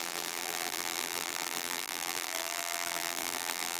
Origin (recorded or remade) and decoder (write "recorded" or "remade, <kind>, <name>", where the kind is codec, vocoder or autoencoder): remade, vocoder, BigVGAN v2